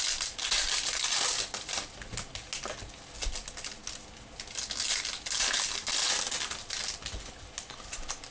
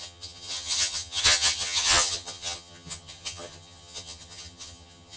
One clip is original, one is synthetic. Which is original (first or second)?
first